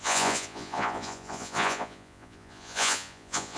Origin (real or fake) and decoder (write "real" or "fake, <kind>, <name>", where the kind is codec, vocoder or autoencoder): fake, vocoder, Vocos